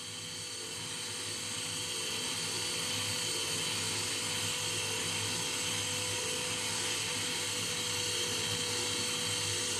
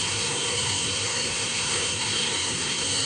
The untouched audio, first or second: first